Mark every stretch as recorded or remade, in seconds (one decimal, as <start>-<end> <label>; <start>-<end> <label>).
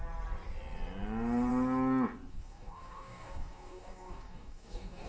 0.0-2.3 recorded; 2.3-5.1 remade